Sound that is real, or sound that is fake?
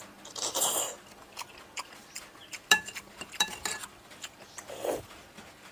real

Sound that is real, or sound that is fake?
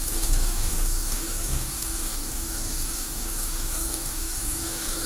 fake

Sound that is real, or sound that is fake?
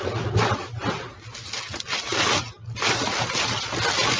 real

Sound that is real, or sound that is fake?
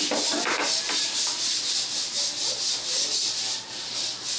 real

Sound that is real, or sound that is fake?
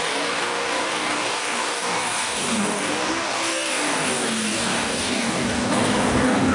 fake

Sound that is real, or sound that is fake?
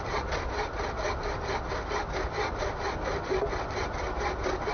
real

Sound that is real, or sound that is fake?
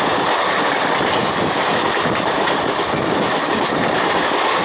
real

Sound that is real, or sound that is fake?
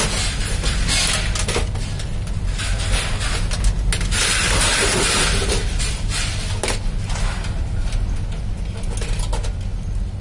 real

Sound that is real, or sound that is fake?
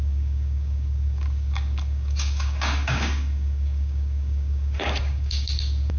fake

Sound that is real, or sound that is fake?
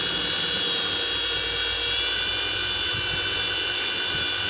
real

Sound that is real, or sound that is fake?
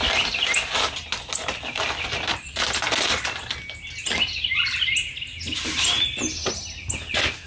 real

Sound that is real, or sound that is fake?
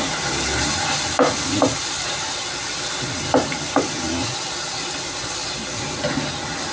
real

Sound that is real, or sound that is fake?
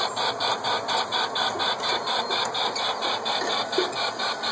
real